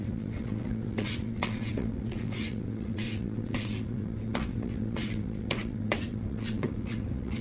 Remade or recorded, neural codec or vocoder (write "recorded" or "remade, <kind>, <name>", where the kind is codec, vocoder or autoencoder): remade, vocoder, WaveNeXt